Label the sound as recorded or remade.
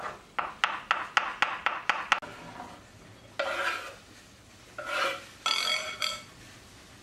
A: recorded